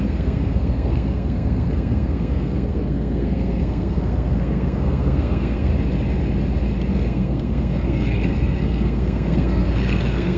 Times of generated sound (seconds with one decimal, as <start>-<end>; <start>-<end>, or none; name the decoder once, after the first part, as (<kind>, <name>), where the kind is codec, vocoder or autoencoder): 0.0-5.7 (codec, SNAC); 6.9-10.4